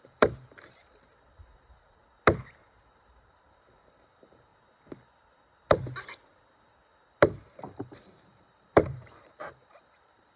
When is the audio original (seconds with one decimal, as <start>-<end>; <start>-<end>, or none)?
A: 2.0-2.8; 4.5-7.1